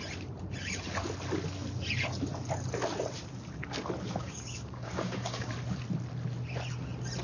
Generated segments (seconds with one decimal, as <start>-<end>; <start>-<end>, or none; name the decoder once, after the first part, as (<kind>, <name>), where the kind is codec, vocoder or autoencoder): 4.2-5.5 (codec, DAC)